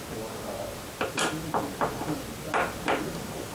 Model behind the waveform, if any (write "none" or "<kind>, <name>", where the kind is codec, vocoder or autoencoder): none